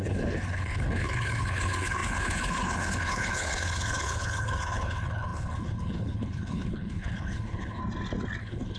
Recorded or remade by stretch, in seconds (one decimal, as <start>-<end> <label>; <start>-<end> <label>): 0.0-7.8 remade; 7.8-8.4 recorded; 8.4-8.8 remade